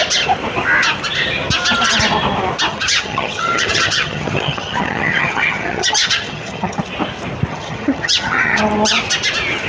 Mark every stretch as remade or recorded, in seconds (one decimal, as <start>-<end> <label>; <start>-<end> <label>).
0.0-2.7 recorded; 2.7-6.8 remade; 6.8-7.5 recorded; 7.5-8.6 remade; 8.6-9.7 recorded